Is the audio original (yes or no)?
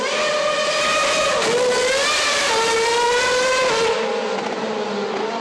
yes